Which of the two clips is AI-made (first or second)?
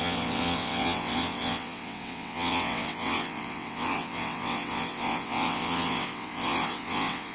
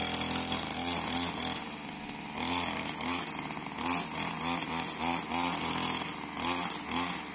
first